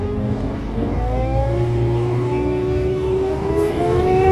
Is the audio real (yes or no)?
no